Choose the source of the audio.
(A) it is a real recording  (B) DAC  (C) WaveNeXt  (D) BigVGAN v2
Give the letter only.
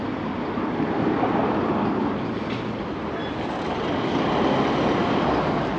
A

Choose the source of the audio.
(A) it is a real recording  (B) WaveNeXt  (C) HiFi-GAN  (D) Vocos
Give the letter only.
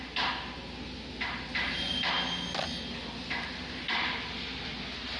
A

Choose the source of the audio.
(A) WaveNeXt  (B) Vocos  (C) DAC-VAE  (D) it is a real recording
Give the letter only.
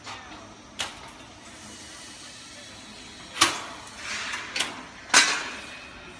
D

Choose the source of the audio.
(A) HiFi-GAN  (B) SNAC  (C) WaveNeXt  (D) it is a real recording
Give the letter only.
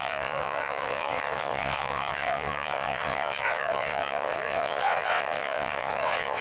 C